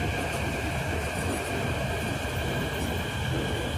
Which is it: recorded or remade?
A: recorded